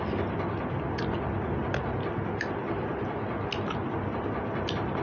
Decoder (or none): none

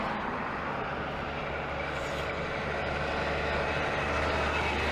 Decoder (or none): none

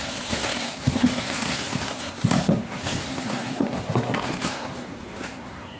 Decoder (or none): codec, SNAC